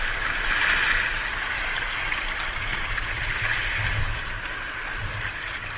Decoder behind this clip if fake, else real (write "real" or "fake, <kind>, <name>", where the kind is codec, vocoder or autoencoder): real